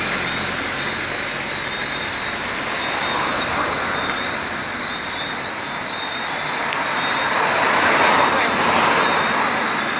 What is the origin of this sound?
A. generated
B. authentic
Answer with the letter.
B